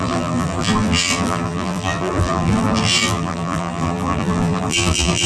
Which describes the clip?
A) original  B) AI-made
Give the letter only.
B